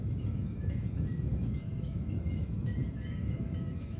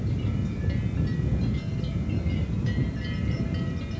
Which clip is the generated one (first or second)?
first